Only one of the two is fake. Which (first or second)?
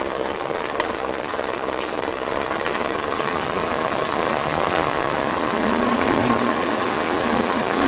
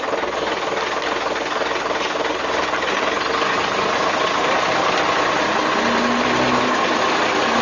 first